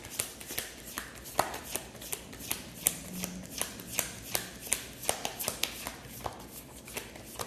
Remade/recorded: recorded